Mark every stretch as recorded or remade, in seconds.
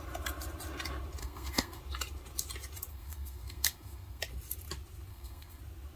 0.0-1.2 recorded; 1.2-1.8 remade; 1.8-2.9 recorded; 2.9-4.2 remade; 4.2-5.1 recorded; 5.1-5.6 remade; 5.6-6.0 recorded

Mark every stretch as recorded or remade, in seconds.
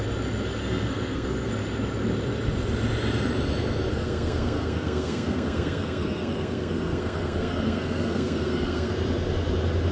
0.0-0.6 recorded; 0.6-1.5 remade; 1.5-3.9 recorded; 3.9-8.9 remade; 8.9-9.9 recorded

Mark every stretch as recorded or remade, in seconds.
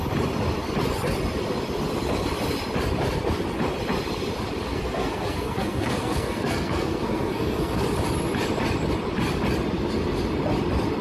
0.0-4.7 recorded; 4.7-7.8 remade; 7.8-11.0 recorded